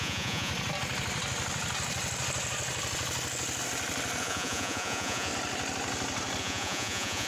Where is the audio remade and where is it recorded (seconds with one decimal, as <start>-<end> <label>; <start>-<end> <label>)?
0.0-0.5 remade; 0.5-4.2 recorded; 4.2-5.3 remade; 5.3-6.4 recorded; 6.4-7.3 remade